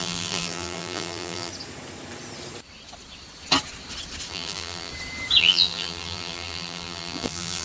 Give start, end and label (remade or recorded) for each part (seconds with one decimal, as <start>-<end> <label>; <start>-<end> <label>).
0.0-1.5 remade; 1.5-4.3 recorded; 4.3-4.9 remade; 4.9-5.4 recorded; 5.4-7.6 remade